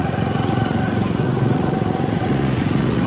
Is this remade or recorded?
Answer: remade